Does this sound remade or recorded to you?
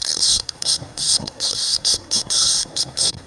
remade